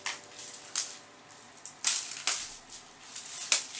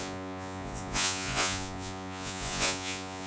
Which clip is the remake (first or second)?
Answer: second